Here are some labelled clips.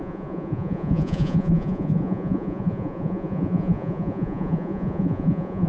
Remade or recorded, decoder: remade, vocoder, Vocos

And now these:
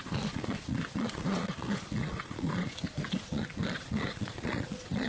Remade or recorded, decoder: remade, vocoder, Vocos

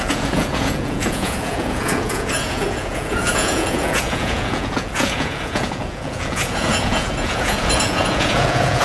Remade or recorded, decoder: remade, vocoder, Vocos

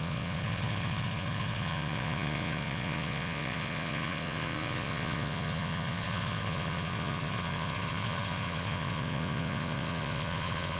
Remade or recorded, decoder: remade, vocoder, Vocos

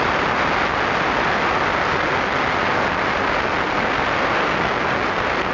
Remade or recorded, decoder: recorded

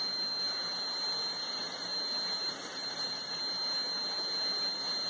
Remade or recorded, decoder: recorded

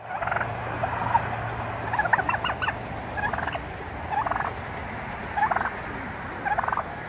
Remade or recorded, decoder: recorded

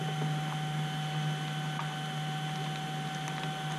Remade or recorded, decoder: recorded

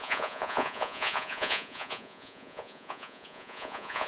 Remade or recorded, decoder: remade, vocoder, Vocos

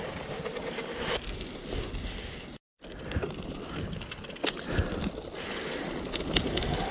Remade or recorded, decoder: recorded